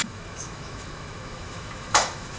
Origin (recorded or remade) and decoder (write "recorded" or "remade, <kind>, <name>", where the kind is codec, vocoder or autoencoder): remade, autoencoder, DAC-VAE